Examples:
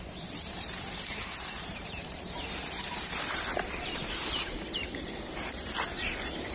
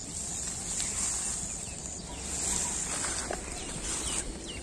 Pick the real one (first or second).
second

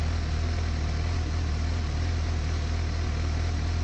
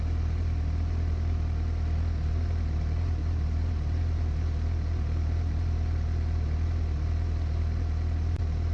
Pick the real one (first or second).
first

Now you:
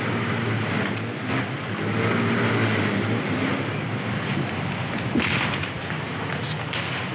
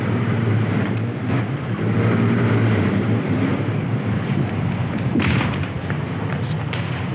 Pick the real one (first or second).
first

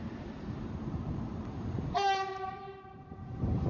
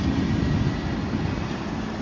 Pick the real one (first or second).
second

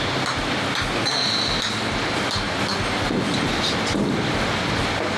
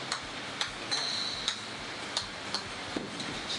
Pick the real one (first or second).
first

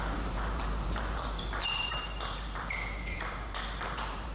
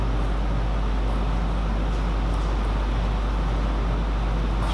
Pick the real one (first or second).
second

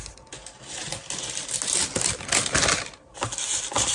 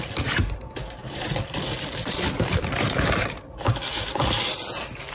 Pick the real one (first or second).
first